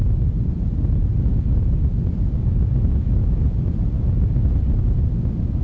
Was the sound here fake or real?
real